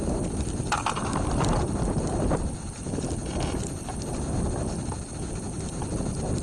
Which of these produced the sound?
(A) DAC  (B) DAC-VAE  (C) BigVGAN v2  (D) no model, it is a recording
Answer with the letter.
D